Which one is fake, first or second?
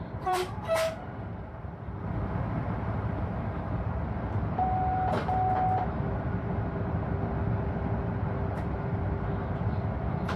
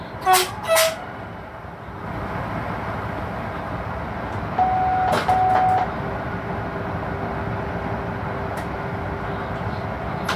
first